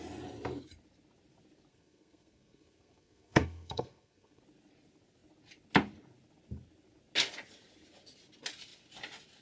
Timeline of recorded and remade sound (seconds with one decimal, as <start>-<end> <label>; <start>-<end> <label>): 0.0-1.7 recorded; 1.7-4.4 remade; 4.4-9.4 recorded